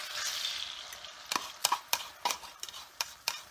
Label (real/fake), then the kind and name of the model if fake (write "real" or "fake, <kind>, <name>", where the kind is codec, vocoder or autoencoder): real